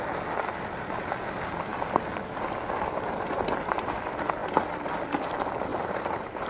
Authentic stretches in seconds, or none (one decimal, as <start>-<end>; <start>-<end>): 0.0-5.7